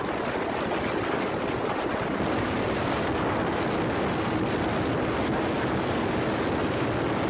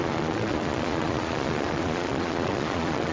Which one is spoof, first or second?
second